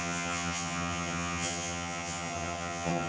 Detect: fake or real fake